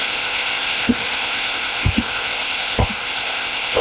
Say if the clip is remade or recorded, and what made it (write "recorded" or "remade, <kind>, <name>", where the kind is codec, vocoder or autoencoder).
remade, codec, ZipCodec